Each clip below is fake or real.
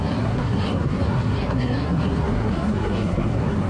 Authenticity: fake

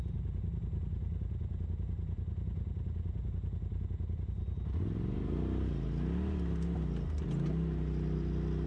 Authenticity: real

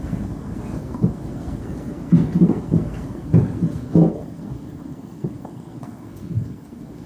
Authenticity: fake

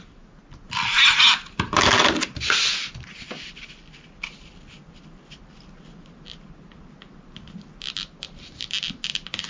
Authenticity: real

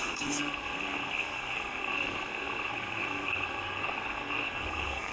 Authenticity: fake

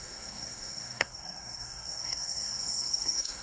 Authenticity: fake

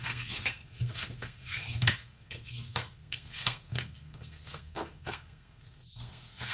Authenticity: fake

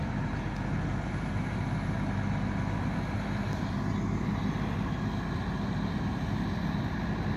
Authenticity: real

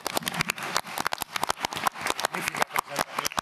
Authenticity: real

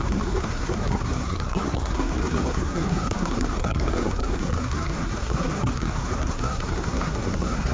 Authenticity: fake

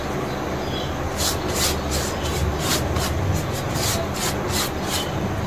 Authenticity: real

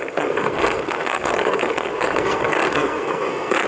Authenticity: fake